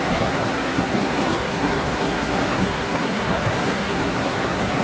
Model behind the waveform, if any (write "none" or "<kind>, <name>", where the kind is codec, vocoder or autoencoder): codec, SNAC